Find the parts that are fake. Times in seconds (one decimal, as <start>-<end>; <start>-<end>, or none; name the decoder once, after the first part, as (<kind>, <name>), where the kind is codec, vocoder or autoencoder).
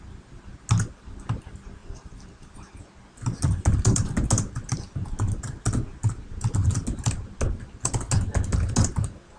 1.8-2.8 (vocoder, BigVGAN v2)